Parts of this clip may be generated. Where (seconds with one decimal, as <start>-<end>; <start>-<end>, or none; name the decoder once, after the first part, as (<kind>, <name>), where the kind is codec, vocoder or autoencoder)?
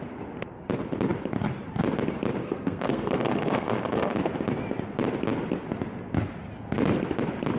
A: 2.4-4.1 (codec, SNAC)